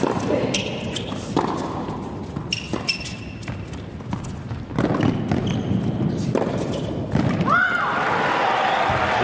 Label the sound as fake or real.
real